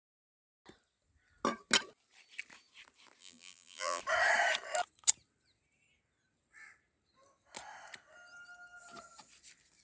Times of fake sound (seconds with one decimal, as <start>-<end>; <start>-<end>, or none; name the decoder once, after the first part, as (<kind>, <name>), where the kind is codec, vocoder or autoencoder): 3.2-4.0 (vocoder, BigVGAN v2)